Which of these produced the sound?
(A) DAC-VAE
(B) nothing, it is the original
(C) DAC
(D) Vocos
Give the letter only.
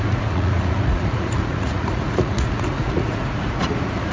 D